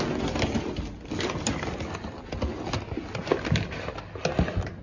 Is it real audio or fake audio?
real